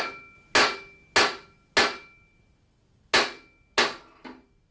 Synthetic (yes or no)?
no